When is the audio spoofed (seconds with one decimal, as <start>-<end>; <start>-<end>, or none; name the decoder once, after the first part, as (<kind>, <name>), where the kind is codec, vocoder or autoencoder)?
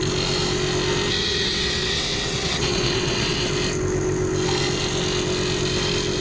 1.2-3.5 (vocoder, WaveNeXt)